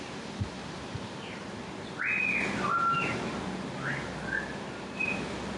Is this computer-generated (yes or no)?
no